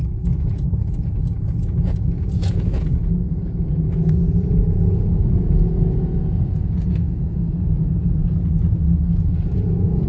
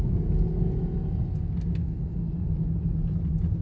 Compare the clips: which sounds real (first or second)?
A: second